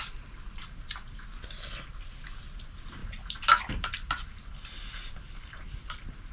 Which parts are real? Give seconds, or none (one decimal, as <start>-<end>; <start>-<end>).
0.0-6.3